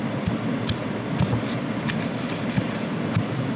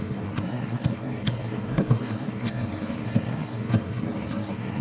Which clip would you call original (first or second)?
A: first